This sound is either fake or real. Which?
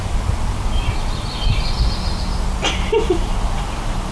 real